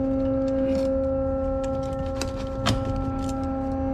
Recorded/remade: recorded